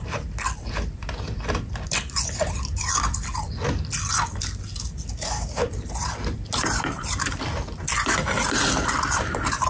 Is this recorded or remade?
recorded